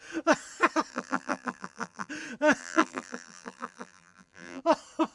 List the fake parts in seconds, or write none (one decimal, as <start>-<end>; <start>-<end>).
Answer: 0.9-2.1; 2.6-4.6